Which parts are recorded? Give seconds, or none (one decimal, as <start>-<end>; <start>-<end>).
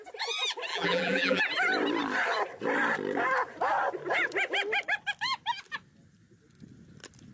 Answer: 0.0-0.7; 1.4-7.3